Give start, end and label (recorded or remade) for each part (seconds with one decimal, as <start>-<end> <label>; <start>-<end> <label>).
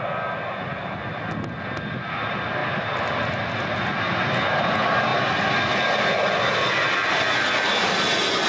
0.0-8.5 recorded